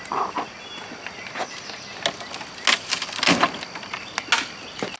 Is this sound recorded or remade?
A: recorded